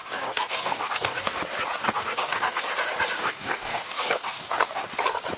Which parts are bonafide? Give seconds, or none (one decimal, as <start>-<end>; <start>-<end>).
1.4-1.8; 2.6-3.2; 4.8-5.4